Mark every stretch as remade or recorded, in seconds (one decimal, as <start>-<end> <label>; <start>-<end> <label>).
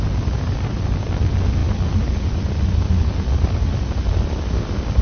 0.0-5.0 recorded